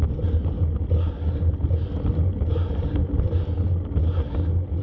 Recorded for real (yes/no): yes